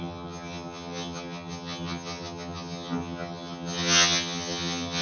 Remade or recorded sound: remade